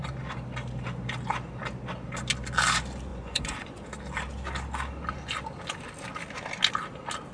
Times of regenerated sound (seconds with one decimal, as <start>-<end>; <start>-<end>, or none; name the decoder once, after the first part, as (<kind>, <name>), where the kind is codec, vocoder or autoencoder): 3.1-3.8 (vocoder, Vocos)